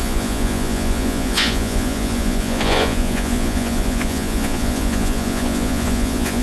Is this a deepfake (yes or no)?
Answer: yes